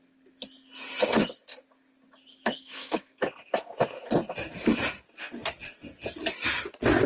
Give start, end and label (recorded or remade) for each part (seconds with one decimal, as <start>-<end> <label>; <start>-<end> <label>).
0.0-2.6 recorded; 2.6-3.2 remade; 3.2-7.1 recorded